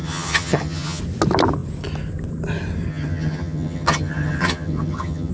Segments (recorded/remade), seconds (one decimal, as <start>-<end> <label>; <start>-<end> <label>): 0.0-1.0 remade; 1.0-2.9 recorded; 2.9-5.3 remade